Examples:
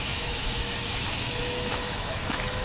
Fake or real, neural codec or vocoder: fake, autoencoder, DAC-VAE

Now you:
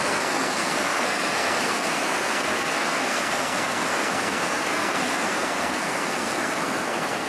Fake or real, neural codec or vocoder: fake, codec, SNAC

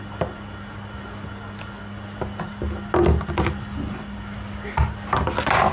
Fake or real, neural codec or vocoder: real